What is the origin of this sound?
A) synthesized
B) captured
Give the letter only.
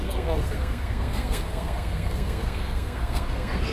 A